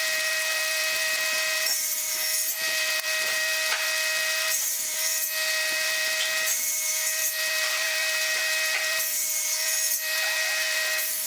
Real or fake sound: fake